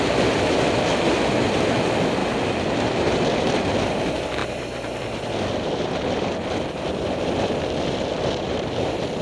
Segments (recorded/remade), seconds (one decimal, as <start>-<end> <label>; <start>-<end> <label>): 0.0-2.2 recorded; 2.2-4.0 remade; 4.0-4.4 recorded; 4.4-9.2 remade